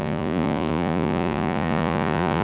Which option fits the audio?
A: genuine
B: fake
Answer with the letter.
B